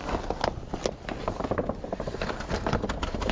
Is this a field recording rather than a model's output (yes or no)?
yes